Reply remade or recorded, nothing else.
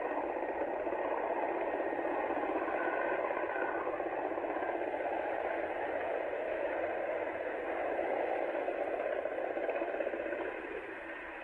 recorded